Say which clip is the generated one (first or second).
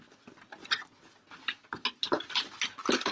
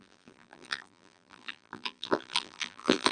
second